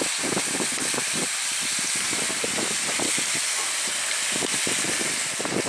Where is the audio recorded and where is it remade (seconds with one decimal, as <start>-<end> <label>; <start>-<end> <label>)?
0.0-5.7 recorded